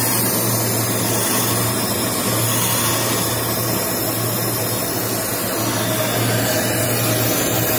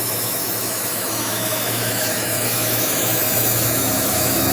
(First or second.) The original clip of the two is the first